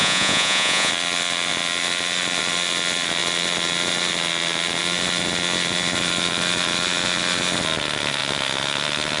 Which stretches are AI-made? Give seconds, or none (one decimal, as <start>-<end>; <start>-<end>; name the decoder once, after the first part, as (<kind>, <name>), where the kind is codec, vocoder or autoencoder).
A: 0.0-0.9 (vocoder, Vocos)